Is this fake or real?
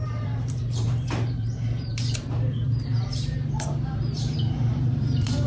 fake